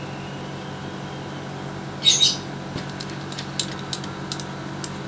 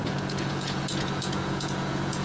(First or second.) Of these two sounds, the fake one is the second